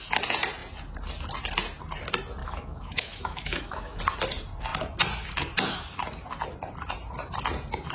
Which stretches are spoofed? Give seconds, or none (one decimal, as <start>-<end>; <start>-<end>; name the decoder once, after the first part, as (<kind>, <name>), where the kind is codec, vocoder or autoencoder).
2.4-4.0 (autoencoder, DAC-VAE)